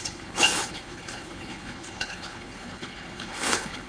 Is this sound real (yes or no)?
no